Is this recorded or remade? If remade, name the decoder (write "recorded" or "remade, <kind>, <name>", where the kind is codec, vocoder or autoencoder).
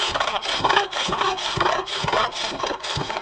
remade, codec, SNAC